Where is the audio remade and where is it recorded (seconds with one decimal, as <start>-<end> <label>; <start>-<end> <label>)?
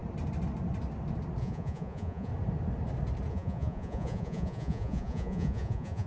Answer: 0.0-1.4 recorded; 1.4-2.3 remade; 2.3-3.3 recorded; 3.3-6.1 remade